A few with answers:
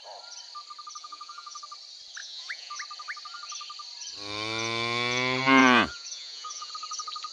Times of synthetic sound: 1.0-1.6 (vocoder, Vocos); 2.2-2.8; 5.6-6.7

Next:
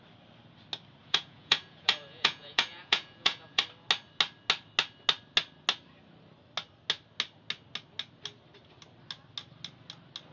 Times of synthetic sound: 1.0-3.6 (vocoder, Vocos)

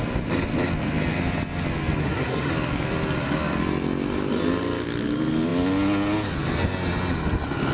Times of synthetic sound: 2.0-2.5 (codec, SNAC)

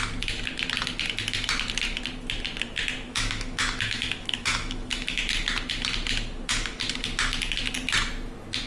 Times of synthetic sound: 3.1-5.2 (autoencoder, DAC-VAE)